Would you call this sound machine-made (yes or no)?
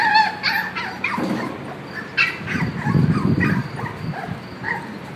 no